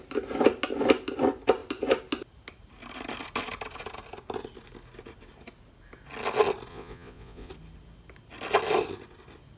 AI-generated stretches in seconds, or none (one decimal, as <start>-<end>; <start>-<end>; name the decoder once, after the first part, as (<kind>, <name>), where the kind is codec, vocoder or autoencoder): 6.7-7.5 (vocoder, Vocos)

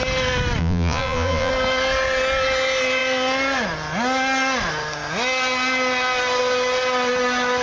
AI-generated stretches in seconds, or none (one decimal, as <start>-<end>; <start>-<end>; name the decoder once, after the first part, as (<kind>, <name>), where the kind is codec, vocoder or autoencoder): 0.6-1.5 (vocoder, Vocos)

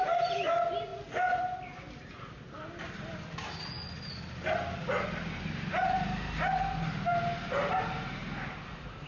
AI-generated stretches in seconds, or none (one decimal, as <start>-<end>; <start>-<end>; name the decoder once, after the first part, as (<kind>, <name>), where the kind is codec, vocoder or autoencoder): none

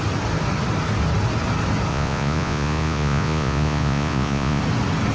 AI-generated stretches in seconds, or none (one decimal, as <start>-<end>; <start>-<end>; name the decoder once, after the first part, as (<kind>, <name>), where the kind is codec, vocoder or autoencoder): 1.9-4.6 (vocoder, Vocos)

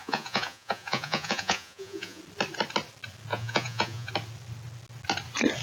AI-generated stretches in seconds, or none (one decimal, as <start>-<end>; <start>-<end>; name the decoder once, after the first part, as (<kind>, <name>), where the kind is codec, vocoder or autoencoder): 0.0-2.2 (vocoder, Vocos); 3.3-4.1

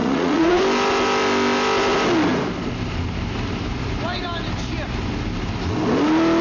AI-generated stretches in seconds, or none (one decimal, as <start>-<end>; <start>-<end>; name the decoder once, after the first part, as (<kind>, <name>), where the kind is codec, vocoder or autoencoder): 0.0-0.6 (vocoder, Vocos)

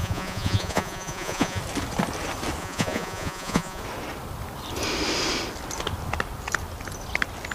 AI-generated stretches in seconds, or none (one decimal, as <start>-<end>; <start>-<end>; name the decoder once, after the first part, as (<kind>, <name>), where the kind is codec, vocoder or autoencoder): 0.0-1.6 (vocoder, Vocos); 2.6-3.8

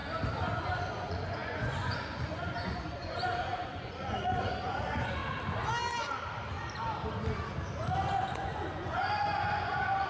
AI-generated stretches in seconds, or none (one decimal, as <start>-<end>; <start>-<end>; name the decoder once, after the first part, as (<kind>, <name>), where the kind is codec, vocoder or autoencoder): 0.6-5.2 (vocoder, Vocos); 8.2-10.1